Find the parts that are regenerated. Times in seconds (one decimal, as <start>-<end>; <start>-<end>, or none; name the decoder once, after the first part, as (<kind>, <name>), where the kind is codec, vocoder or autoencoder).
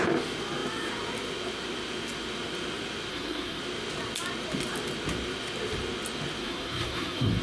3.1-3.6 (codec, SNAC); 6.4-7.4